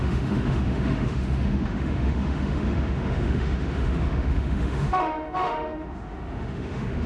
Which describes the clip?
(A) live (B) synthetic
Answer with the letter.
B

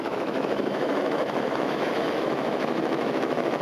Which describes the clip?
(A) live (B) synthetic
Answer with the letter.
B